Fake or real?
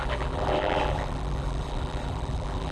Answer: fake